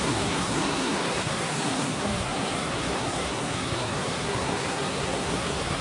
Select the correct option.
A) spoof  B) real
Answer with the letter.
A